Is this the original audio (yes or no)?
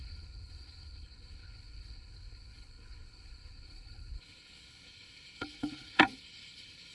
no